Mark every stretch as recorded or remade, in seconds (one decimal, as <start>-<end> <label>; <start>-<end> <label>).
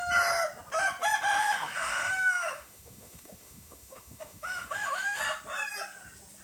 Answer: 0.0-1.4 recorded; 1.4-5.2 remade; 5.2-6.4 recorded